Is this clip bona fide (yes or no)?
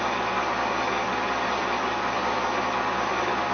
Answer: yes